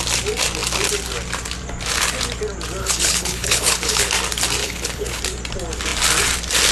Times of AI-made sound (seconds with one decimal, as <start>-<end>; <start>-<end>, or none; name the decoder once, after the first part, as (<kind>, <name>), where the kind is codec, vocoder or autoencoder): 2.8-4.0 (codec, HILCodec); 4.6-5.2